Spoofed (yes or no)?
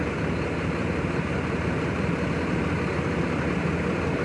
no